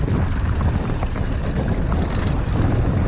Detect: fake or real real